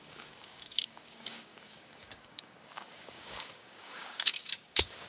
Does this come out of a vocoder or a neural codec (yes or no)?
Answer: yes